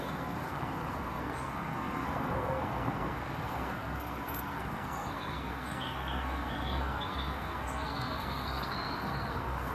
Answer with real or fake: fake